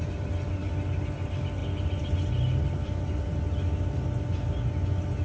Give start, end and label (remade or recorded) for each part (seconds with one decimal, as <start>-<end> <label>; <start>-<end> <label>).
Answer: 0.0-5.2 recorded